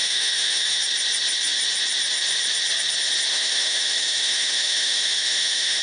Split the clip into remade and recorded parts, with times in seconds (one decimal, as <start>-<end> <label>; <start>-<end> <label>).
0.0-0.8 remade; 0.8-3.3 recorded; 3.3-5.8 remade